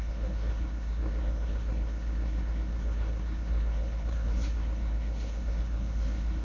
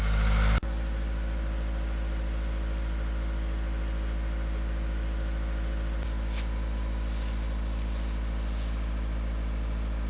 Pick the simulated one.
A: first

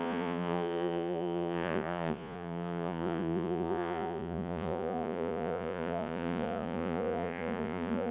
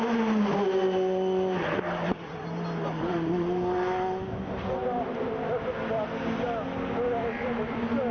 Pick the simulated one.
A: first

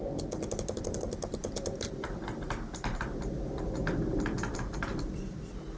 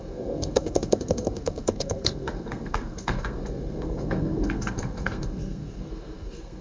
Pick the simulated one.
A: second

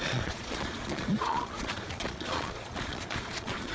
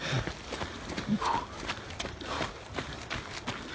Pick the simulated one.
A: first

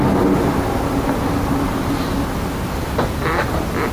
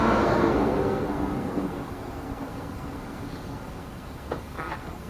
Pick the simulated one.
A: second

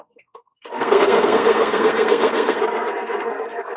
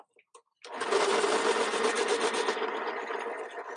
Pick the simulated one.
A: first